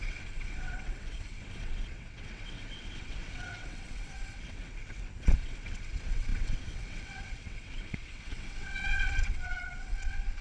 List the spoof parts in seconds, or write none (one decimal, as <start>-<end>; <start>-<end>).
0.0-10.4